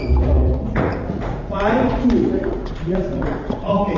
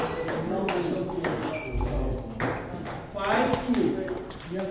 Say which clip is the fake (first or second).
first